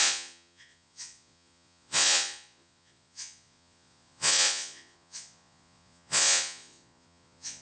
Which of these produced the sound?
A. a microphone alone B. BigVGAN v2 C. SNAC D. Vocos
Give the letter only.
D